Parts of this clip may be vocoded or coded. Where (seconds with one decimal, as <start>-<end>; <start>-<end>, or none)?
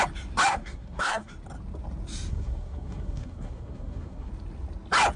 0.5-1.3; 2.3-4.3